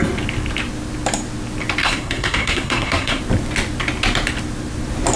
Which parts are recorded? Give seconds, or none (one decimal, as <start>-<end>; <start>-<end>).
0.0-1.8; 3.2-5.2